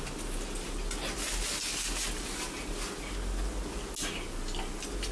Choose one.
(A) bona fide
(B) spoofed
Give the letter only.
A